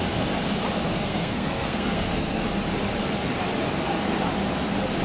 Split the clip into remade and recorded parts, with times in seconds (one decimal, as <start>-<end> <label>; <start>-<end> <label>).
0.0-0.9 recorded; 0.9-2.4 remade; 2.4-5.0 recorded